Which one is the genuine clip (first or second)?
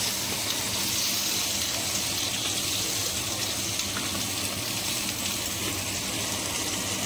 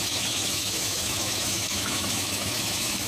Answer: first